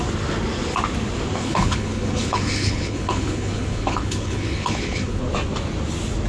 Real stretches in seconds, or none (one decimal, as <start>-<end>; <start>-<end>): 0.0-1.4; 5.2-6.3